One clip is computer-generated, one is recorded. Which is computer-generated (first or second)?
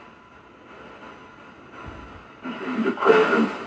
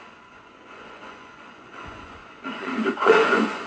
second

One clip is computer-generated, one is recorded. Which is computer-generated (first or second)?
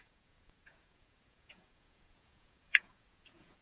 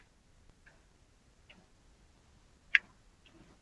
first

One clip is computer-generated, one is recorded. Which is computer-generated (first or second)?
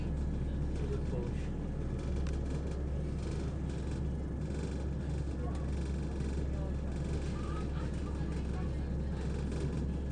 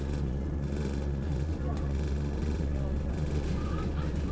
second